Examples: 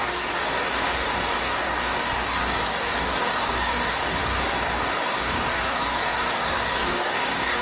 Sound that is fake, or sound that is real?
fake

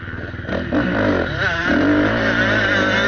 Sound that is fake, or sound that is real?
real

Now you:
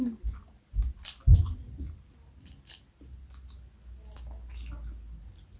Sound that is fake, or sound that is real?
real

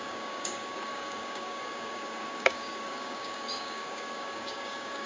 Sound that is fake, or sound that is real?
fake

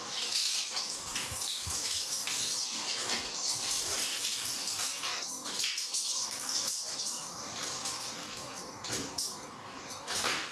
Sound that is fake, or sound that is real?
fake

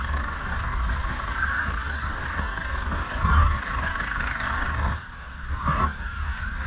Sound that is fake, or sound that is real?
fake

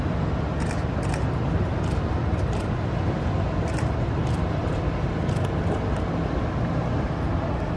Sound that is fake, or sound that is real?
real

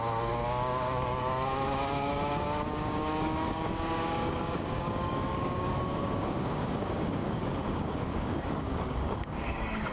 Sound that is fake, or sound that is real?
fake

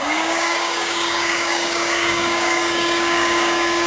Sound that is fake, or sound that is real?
fake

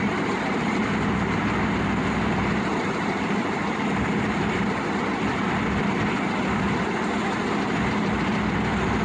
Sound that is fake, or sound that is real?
real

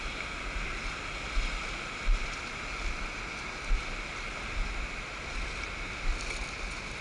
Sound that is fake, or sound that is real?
real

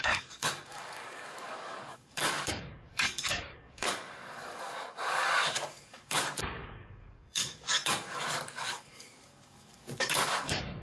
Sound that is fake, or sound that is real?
fake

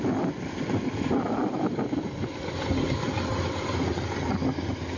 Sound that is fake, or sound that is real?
real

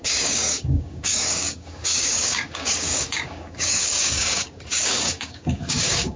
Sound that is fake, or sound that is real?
fake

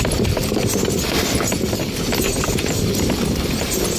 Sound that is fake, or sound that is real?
real